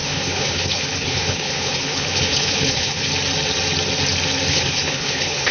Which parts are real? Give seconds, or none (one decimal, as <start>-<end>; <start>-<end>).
3.1-4.5